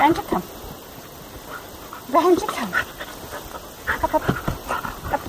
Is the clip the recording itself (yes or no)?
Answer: yes